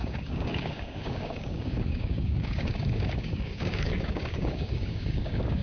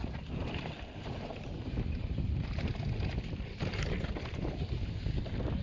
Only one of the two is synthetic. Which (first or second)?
first